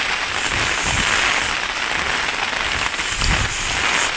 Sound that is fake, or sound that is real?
real